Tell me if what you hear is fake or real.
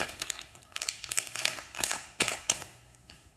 fake